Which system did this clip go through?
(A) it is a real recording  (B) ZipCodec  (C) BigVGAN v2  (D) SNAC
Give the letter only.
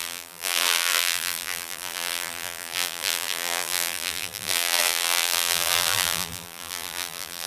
C